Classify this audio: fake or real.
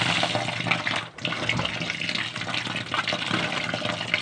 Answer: real